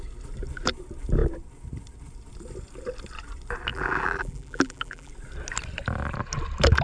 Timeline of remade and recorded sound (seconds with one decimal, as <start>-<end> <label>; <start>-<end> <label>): 0.0-3.7 recorded; 3.7-5.1 remade; 5.1-6.8 recorded